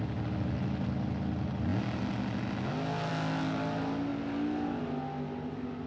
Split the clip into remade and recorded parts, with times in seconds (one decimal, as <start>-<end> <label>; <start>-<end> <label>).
0.0-5.9 recorded